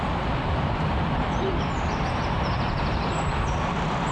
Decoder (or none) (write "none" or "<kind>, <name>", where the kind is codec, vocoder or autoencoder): none